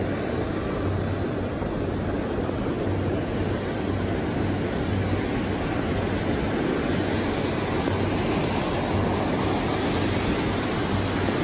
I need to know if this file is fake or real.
real